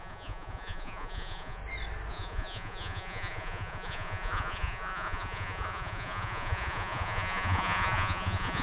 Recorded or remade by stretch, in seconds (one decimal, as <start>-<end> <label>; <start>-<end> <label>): 0.0-1.6 remade; 1.6-2.1 recorded; 2.1-8.6 remade